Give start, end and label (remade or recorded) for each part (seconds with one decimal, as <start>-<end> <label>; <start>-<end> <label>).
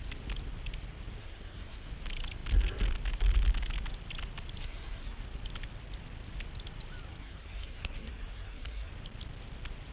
0.0-1.2 recorded; 1.2-1.9 remade; 1.9-4.6 recorded; 4.6-5.2 remade; 5.2-7.2 recorded; 7.2-8.9 remade; 8.9-9.9 recorded